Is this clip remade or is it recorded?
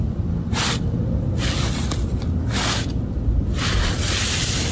recorded